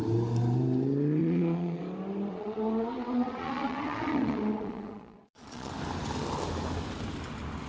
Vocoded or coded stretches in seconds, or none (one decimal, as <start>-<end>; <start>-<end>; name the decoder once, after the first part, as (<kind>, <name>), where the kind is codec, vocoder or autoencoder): 1.2-1.8 (vocoder, Vocos); 2.3-5.7